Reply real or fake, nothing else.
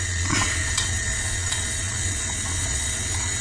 fake